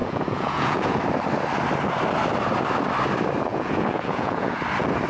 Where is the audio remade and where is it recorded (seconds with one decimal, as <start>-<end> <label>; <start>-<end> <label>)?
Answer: 0.0-1.0 remade; 1.0-3.5 recorded; 3.5-4.6 remade; 4.6-5.1 recorded